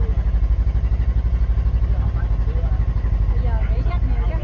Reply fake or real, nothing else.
real